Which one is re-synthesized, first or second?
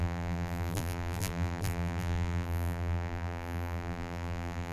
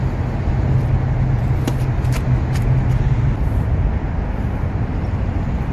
first